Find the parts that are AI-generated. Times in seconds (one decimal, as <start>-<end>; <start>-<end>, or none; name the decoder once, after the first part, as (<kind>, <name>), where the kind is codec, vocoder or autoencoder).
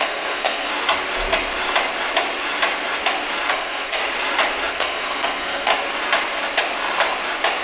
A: 0.0-0.7 (codec, SNAC); 3.5-4.0; 4.7-5.7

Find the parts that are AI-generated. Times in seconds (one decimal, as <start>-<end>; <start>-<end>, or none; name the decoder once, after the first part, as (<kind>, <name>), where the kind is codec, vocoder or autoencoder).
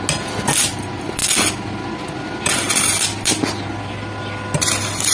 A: none